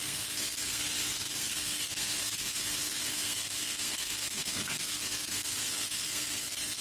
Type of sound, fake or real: fake